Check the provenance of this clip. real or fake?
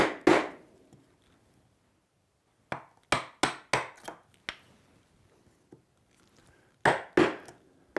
real